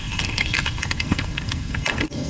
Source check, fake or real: fake